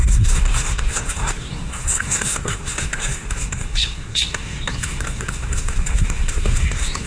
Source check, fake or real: fake